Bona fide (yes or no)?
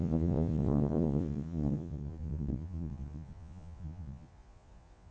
no